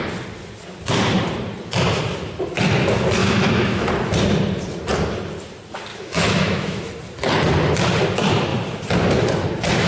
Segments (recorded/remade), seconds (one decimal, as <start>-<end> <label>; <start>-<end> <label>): 0.0-3.2 recorded; 3.2-3.9 remade; 3.9-5.9 recorded; 5.9-6.9 remade; 6.9-9.9 recorded